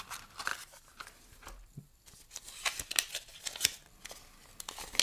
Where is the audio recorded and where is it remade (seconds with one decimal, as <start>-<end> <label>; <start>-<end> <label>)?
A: 0.0-5.0 recorded